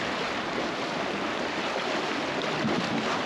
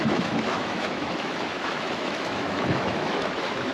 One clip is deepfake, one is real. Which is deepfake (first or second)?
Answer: second